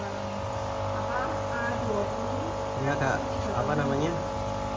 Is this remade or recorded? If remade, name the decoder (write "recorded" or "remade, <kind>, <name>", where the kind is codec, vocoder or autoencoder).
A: recorded